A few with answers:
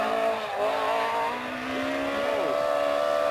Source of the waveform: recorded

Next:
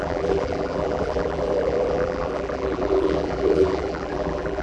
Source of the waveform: remade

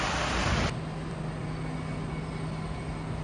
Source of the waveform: recorded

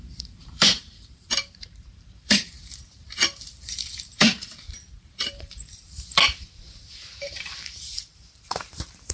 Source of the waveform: remade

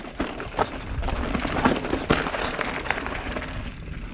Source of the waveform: recorded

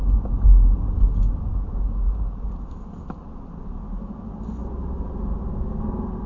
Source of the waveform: recorded